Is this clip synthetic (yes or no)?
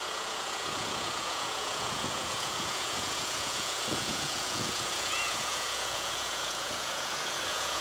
yes